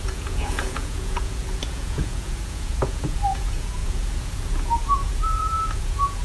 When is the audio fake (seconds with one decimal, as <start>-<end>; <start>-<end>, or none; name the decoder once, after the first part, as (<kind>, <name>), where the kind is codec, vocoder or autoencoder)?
0.0-6.2 (vocoder, Vocos)